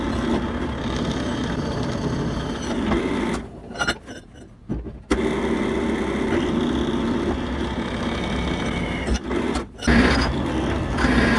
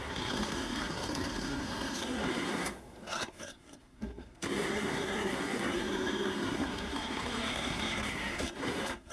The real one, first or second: first